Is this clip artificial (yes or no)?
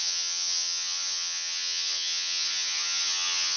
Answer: yes